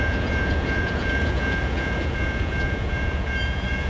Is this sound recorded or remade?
remade